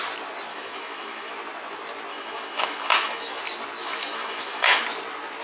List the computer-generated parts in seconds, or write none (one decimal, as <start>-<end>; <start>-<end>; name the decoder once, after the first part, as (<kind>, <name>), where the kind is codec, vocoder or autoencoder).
0.5-1.3 (autoencoder, DAC-VAE); 2.1-3.4; 3.8-4.8